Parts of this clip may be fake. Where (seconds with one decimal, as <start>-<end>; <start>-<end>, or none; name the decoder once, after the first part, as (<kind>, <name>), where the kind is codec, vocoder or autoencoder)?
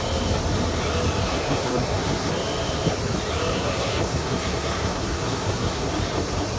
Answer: 1.2-2.3 (codec, SNAC); 3.5-5.9